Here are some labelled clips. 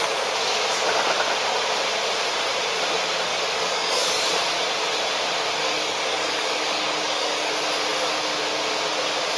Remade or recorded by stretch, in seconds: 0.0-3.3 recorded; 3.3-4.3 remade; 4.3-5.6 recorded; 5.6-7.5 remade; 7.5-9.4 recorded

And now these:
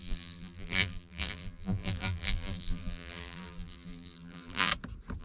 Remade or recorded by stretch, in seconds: 0.0-4.7 remade; 4.7-5.2 recorded

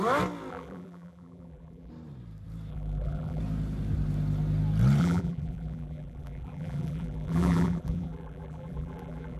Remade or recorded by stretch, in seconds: 0.0-0.5 recorded; 0.5-1.9 remade; 1.9-2.7 recorded; 2.7-3.4 remade; 3.4-5.0 recorded; 5.0-9.4 remade